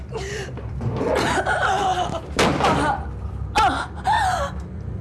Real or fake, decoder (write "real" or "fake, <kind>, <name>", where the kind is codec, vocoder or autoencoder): fake, vocoder, BigVGAN v2